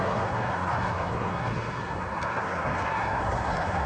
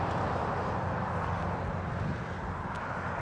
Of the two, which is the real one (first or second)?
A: second